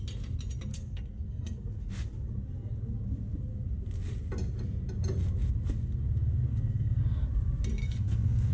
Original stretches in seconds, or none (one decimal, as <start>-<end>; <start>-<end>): 0.0-0.7; 1.9-6.5; 7.0-7.8